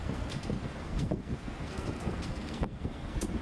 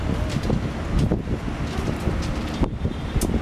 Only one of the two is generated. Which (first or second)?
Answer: first